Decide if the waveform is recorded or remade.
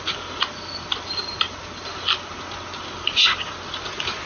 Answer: recorded